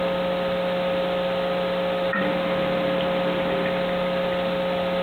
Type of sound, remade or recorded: recorded